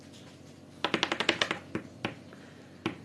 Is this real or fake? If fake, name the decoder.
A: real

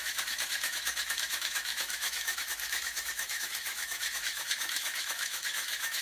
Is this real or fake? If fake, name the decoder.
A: fake, autoencoder, DAC-VAE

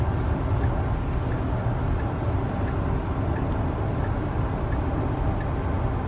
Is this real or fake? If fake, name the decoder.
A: real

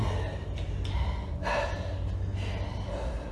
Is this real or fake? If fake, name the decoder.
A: real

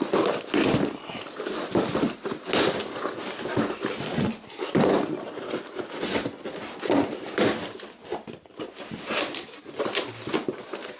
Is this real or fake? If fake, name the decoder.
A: real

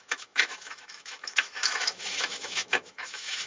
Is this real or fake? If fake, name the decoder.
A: fake, autoencoder, DAC-VAE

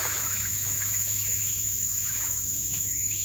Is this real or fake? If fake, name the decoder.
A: fake, autoencoder, DAC-VAE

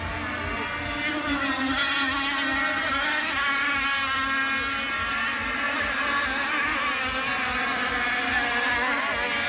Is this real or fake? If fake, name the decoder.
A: real